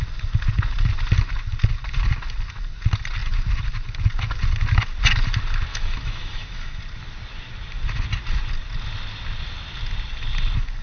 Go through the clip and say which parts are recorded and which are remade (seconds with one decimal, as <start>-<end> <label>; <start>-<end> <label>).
0.0-5.7 recorded; 5.7-6.8 remade; 6.8-10.8 recorded